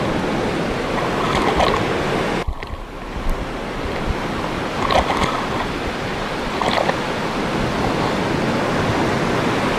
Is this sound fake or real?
real